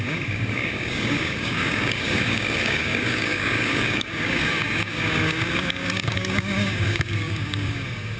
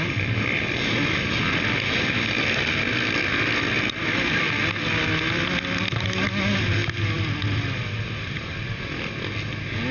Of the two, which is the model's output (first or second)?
first